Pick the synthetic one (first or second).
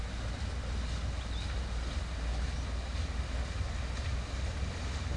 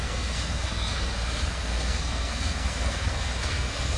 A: second